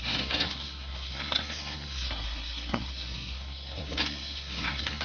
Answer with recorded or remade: remade